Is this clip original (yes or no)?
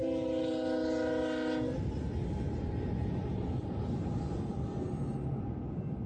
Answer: yes